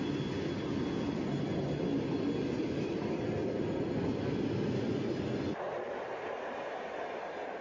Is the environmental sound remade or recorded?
recorded